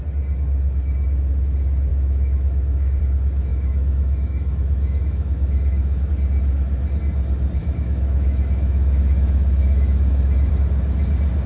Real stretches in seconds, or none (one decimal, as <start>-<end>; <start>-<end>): 0.0-1.9; 3.0-3.5; 6.1-7.6; 10.5-11.5